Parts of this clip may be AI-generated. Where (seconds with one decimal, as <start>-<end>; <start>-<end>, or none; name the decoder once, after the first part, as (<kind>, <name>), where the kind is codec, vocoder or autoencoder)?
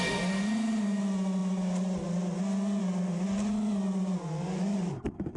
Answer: none